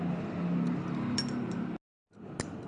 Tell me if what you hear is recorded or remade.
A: recorded